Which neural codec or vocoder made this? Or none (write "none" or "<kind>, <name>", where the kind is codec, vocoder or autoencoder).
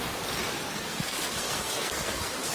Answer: codec, SNAC